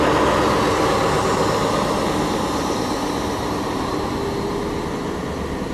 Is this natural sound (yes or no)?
yes